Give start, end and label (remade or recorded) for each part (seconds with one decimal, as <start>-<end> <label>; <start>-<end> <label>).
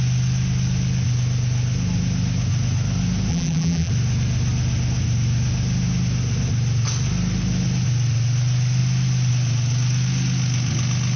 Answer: 0.0-3.3 recorded; 3.3-3.9 remade; 3.9-11.2 recorded